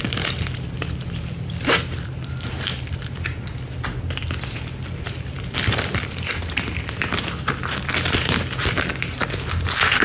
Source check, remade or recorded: remade